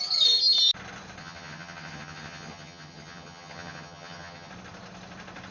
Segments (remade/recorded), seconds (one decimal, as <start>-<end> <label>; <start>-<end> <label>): 0.0-1.2 recorded; 1.2-4.5 remade; 4.5-5.5 recorded